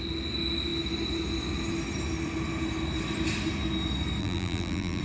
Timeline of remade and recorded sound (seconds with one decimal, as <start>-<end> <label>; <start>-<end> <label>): 0.0-4.2 recorded; 4.2-5.0 remade